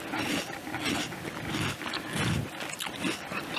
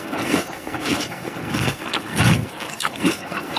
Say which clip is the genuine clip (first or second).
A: first